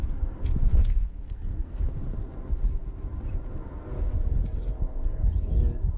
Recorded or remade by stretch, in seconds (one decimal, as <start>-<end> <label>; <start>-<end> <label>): 0.0-0.7 recorded; 0.7-1.8 remade; 1.8-6.0 recorded